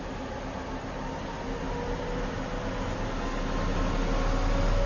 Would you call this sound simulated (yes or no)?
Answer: no